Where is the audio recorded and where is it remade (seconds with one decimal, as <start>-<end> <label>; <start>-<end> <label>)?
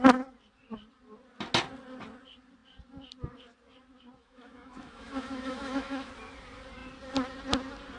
0.0-4.2 recorded; 4.2-6.1 remade; 6.1-8.0 recorded